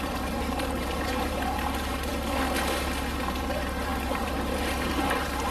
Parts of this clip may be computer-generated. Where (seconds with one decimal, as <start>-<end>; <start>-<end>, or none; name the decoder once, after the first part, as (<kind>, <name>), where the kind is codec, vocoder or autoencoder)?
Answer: 0.0-2.1 (vocoder, BigVGAN v2); 3.2-5.5